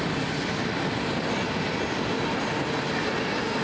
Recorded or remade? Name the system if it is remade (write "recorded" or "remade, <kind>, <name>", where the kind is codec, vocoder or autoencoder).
recorded